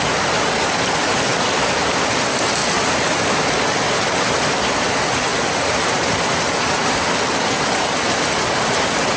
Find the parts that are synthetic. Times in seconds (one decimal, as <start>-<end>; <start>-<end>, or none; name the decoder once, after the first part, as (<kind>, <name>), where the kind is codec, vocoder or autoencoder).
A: none